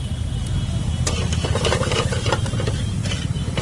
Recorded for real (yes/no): yes